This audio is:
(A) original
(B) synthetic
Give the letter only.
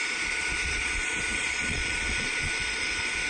B